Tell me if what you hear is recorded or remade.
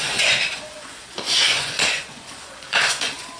remade